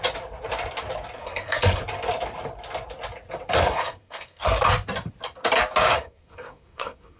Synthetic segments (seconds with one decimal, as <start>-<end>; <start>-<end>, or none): 1.2-1.8; 3.6-4.6; 5.9-7.2